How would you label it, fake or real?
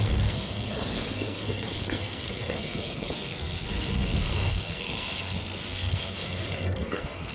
fake